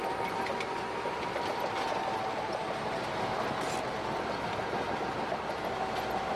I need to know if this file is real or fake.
real